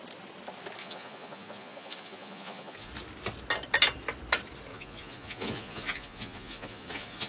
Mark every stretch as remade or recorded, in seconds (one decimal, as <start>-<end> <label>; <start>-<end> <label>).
0.0-0.8 recorded; 0.8-2.9 remade; 2.9-4.7 recorded; 4.7-7.3 remade